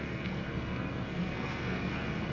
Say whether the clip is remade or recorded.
remade